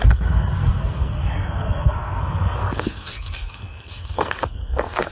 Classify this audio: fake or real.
fake